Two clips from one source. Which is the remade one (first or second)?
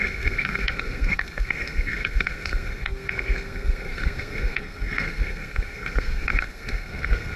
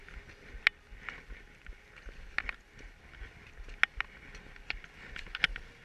first